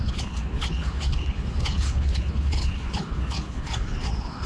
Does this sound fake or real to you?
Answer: fake